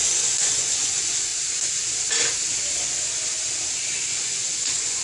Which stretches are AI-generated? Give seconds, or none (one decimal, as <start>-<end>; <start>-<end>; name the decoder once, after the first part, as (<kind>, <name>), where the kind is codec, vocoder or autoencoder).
0.0-1.3 (vocoder, Vocos); 4.1-5.0